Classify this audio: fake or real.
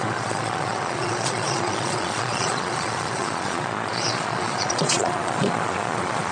fake